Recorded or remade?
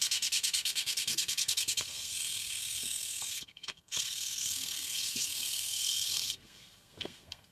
remade